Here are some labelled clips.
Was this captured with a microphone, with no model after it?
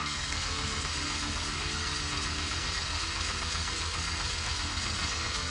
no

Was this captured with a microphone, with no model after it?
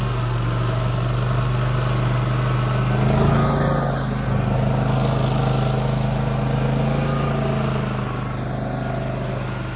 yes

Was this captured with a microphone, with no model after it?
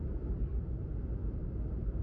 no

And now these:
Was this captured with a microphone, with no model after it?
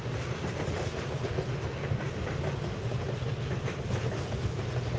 yes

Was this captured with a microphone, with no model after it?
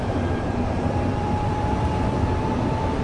no